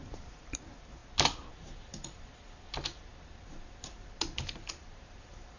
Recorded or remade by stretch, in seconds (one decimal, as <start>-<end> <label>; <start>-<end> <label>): 0.0-1.0 remade; 1.0-1.5 recorded; 1.5-3.1 remade; 3.1-4.7 recorded; 4.7-5.6 remade